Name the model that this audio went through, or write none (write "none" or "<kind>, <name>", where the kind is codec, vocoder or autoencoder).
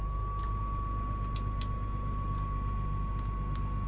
none